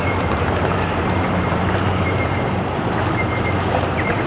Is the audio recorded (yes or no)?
no